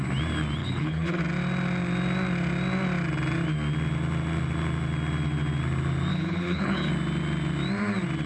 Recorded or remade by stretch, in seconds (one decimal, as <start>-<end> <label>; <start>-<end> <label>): 0.0-0.6 recorded; 0.6-1.2 remade; 1.2-6.1 recorded; 6.1-6.9 remade; 6.9-8.3 recorded